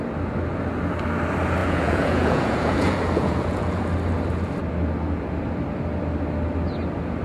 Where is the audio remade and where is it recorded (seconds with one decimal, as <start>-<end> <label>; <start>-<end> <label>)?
0.0-1.6 recorded; 1.6-3.9 remade; 3.9-7.2 recorded